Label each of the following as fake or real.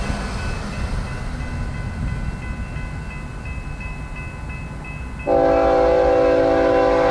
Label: real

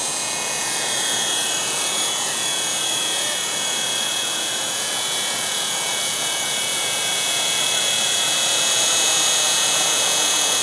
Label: fake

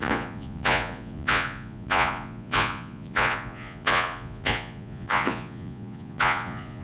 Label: fake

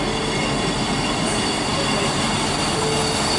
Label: real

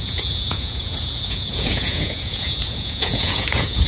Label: fake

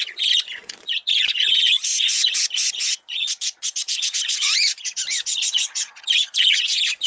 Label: fake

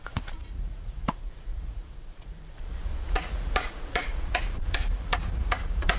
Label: fake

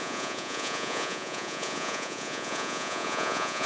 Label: fake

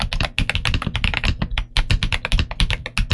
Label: real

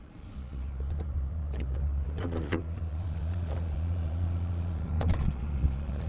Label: fake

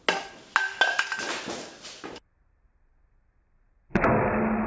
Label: real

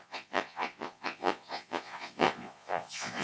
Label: fake